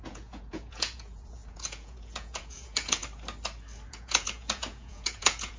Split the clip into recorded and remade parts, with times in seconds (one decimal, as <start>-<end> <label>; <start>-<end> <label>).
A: 0.0-3.0 remade; 3.0-3.9 recorded; 3.9-5.6 remade